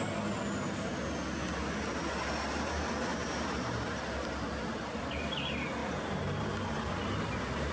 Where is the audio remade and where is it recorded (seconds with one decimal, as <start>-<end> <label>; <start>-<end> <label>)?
0.0-3.1 recorded; 3.1-5.0 remade; 5.0-5.8 recorded; 5.8-6.4 remade; 6.4-7.7 recorded